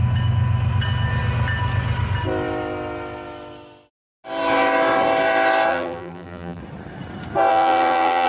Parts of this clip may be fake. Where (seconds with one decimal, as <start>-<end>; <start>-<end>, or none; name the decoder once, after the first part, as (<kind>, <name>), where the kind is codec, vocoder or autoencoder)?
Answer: 5.7-6.6 (vocoder, BigVGAN v2); 7.5-8.3